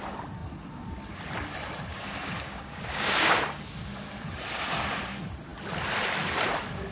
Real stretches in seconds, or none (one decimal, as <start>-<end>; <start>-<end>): 0.0-1.9; 3.4-6.9